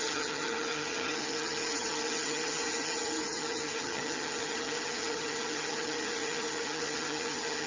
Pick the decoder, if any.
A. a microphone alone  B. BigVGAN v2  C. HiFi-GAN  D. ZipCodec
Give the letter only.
C